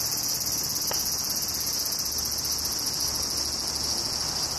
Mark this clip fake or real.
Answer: real